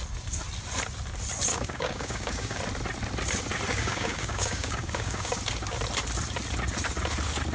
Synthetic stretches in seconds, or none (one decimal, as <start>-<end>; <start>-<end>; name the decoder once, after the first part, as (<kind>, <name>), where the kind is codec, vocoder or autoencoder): 1.5-2.6 (codec, DAC); 3.7-5.4